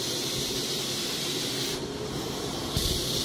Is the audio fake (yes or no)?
yes